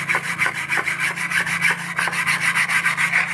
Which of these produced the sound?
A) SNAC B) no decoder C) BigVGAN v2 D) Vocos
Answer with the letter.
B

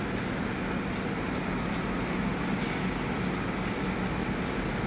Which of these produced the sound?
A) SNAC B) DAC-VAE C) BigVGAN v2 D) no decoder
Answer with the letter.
D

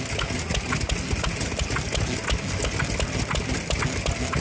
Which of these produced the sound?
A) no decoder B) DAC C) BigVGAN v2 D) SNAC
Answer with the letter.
A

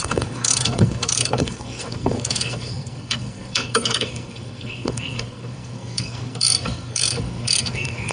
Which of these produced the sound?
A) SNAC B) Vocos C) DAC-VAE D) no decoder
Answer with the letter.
A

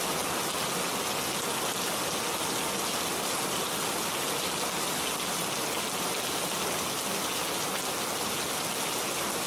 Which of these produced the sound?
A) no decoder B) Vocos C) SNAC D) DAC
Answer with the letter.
A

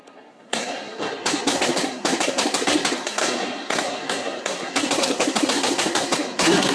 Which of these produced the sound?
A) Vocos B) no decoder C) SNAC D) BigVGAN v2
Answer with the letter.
C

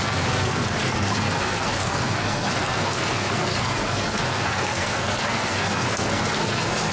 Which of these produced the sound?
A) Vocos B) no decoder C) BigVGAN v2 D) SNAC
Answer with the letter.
D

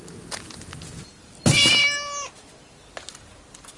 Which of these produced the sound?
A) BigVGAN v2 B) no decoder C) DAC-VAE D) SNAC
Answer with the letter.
B